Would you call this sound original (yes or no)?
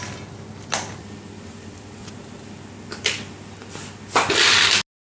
yes